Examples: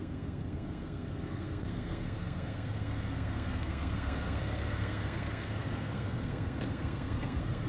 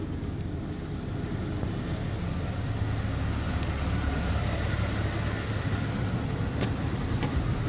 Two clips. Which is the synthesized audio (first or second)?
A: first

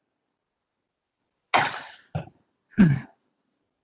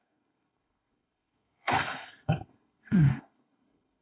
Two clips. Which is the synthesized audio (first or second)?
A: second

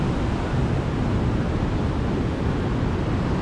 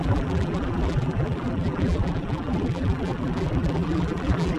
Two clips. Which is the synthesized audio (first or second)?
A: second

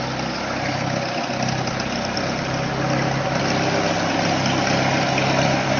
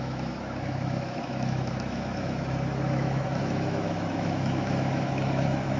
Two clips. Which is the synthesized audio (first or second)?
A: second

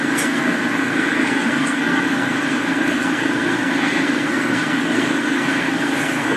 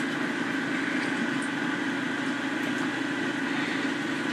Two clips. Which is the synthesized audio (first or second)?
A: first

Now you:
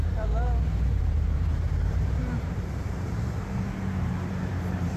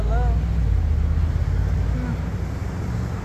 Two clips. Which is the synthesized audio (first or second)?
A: first